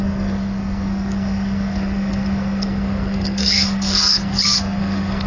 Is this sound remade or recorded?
remade